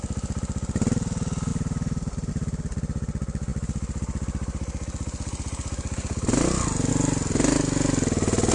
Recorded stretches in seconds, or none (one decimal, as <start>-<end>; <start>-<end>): 0.0-1.5; 2.3-8.5